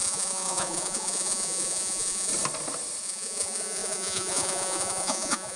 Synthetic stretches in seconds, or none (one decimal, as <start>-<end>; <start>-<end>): 0.0-2.3; 3.0-5.6

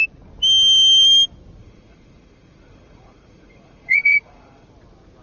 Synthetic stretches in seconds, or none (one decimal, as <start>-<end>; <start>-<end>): 1.6-4.7

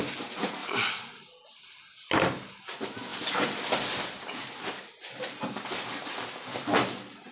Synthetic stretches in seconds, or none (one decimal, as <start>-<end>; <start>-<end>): 0.6-1.2; 3.1-4.0

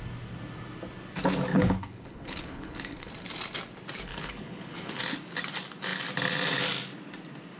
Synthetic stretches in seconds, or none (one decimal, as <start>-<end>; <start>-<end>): 1.5-3.1; 4.1-5.0

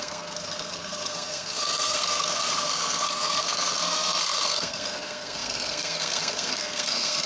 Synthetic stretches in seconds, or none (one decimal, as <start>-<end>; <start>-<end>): 0.0-7.3

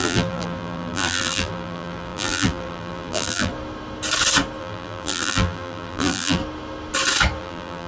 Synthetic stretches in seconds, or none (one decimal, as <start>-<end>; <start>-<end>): 0.0-3.5; 4.6-6.4; 7.4-7.9